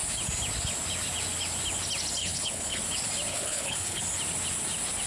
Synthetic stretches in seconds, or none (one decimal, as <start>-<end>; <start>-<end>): 2.2-2.8; 3.3-4.0